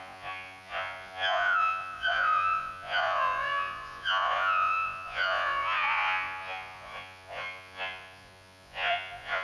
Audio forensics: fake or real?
fake